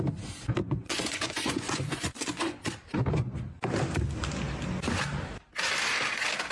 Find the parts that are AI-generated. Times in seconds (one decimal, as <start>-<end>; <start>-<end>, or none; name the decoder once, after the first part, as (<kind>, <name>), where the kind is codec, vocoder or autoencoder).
0.6-2.7 (vocoder, Vocos)